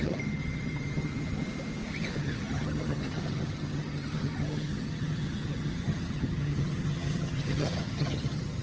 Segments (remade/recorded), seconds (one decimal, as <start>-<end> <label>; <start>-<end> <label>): 0.0-1.4 remade; 1.4-2.2 recorded; 2.2-8.6 remade